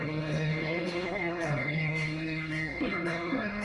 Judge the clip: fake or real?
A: fake